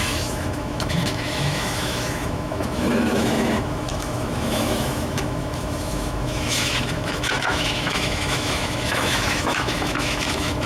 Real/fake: fake